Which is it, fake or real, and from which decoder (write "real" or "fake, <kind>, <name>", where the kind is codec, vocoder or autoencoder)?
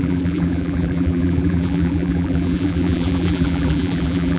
fake, vocoder, BigVGAN v2